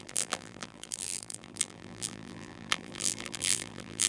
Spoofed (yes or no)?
yes